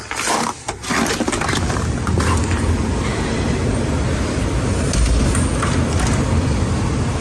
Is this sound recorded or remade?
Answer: recorded